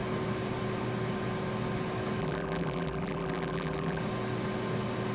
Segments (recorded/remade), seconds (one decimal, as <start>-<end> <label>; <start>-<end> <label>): 0.0-2.2 recorded; 2.2-4.0 remade; 4.0-5.1 recorded